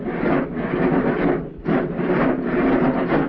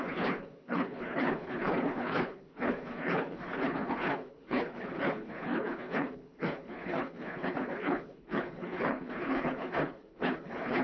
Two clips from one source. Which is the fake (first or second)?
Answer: second